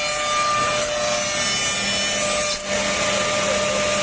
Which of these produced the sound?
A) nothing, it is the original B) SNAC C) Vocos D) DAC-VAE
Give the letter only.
A